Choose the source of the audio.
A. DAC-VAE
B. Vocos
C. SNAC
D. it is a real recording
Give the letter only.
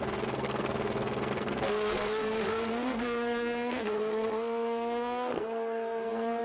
C